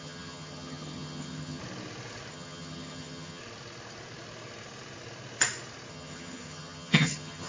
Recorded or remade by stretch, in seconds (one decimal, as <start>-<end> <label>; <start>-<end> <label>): 0.0-1.6 remade; 1.6-2.3 recorded; 2.3-3.4 remade; 3.4-5.9 recorded; 5.9-7.5 remade